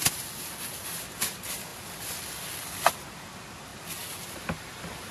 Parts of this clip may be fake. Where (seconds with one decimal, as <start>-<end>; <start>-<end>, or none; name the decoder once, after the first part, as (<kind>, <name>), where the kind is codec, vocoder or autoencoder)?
none